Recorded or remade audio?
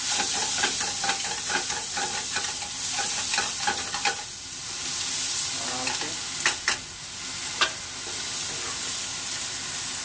recorded